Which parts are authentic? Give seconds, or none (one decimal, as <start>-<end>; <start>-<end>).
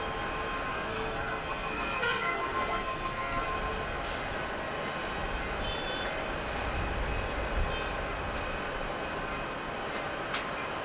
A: 0.0-0.7; 3.4-10.8